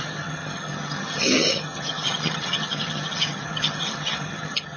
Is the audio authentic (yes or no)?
no